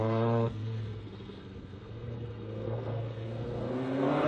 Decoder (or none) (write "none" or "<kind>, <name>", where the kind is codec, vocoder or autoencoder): codec, SNAC